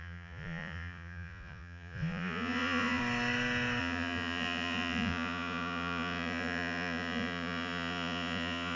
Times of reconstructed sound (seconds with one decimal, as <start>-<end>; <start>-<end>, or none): 0.0-3.0; 3.8-8.8